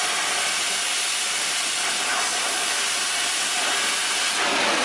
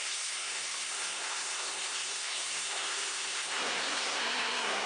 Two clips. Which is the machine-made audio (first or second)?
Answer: second